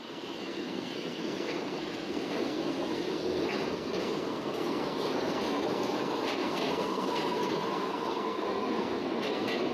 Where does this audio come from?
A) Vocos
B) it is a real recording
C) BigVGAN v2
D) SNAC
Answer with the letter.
D